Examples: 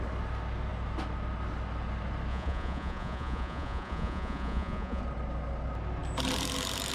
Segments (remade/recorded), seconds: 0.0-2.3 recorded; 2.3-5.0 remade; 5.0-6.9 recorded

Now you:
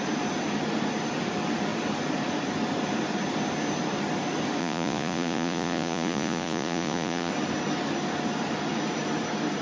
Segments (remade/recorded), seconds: 0.0-4.6 recorded; 4.6-7.3 remade; 7.3-9.6 recorded

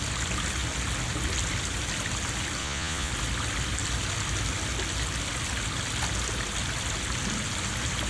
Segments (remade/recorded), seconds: 0.0-2.6 recorded; 2.6-3.1 remade; 3.1-8.1 recorded